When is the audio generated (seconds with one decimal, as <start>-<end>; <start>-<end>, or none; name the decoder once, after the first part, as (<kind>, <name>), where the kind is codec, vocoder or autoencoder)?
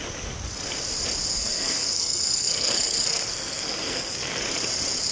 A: 1.3-4.4 (codec, SNAC)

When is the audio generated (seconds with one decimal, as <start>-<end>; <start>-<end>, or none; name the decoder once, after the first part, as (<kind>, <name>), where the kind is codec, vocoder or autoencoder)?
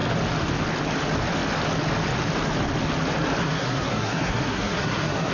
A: 3.4-5.3 (codec, SNAC)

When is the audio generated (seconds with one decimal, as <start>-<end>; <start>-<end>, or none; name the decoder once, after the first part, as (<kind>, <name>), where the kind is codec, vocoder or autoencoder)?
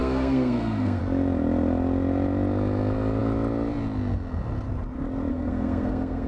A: 0.0-1.0 (codec, SNAC); 5.3-6.3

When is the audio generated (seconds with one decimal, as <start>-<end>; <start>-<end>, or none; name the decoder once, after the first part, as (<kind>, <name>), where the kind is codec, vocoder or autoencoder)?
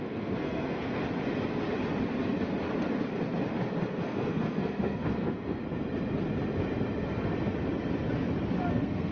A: 0.0-1.0 (codec, SNAC); 4.0-5.6; 8.7-9.1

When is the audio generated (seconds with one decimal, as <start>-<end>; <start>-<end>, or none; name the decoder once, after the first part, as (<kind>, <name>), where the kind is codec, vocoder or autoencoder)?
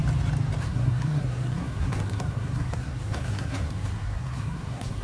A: 0.6-5.0 (codec, SNAC)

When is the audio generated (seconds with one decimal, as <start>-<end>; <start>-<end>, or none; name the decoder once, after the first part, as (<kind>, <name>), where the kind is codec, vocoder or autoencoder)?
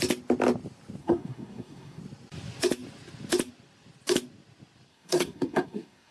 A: 1.0-2.0 (codec, SNAC); 4.9-6.1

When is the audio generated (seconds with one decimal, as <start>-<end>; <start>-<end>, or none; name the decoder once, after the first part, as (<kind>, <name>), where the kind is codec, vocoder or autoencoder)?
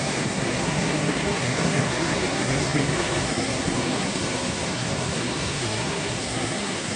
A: 0.0-7.0 (codec, SNAC)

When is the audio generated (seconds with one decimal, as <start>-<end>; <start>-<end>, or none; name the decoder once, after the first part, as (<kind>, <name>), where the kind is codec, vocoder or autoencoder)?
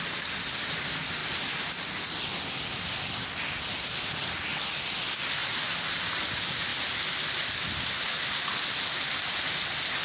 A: none